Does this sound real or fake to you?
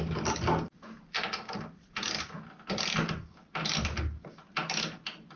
real